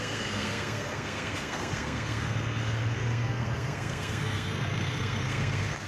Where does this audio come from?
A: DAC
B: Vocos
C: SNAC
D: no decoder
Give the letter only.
C